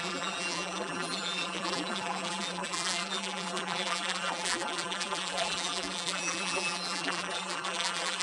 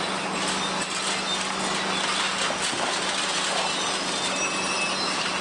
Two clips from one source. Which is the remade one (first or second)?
first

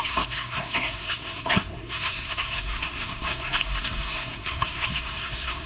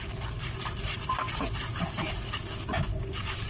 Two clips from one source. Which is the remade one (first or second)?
first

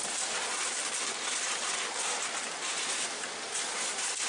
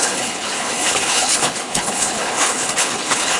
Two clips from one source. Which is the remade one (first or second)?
second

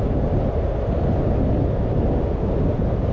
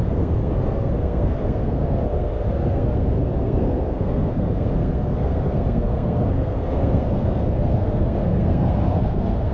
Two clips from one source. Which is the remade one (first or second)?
second